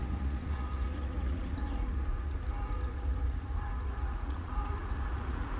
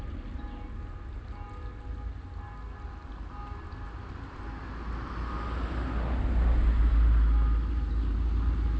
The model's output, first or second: first